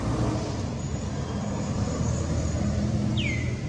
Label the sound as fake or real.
real